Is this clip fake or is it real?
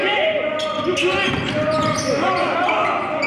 real